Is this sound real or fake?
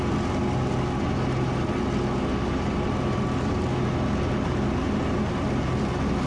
real